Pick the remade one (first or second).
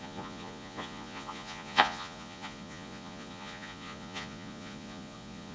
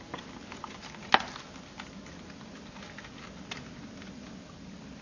first